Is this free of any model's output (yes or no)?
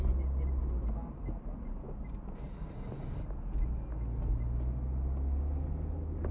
yes